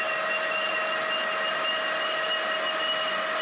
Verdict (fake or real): real